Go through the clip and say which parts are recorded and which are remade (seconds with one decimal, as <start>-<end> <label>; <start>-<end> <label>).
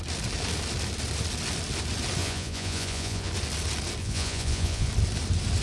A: 0.0-2.2 recorded; 2.2-3.3 remade; 3.3-4.0 recorded; 4.0-4.9 remade; 4.9-5.6 recorded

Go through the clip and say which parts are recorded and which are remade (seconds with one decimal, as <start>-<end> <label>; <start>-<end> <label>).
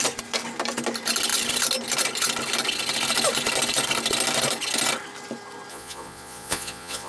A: 0.0-5.7 recorded; 5.7-7.1 remade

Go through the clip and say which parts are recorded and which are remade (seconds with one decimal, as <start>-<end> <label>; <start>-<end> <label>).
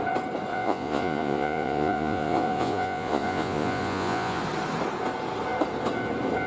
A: 0.0-0.5 recorded; 0.5-4.4 remade; 4.4-6.5 recorded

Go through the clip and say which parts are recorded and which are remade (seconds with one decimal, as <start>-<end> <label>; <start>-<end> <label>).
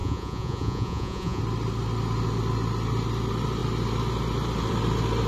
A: 0.0-1.4 remade; 1.4-5.3 recorded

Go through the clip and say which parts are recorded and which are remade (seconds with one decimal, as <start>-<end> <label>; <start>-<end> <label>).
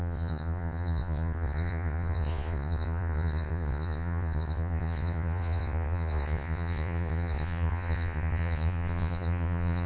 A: 0.0-9.9 remade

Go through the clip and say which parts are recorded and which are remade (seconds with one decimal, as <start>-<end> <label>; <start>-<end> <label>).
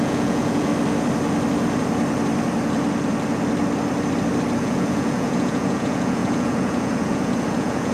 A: 0.0-0.7 remade; 0.7-4.6 recorded; 4.6-7.9 remade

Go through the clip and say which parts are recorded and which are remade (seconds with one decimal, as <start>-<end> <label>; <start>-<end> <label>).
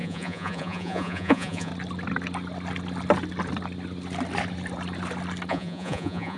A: 0.0-1.7 remade; 1.7-5.5 recorded; 5.5-6.4 remade